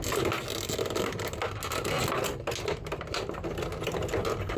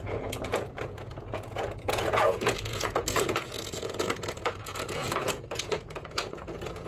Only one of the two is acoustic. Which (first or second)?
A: first